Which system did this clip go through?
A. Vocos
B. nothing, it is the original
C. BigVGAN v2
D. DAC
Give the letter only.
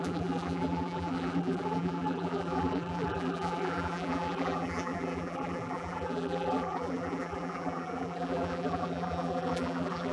C